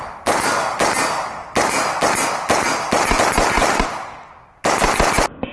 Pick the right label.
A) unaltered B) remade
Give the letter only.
A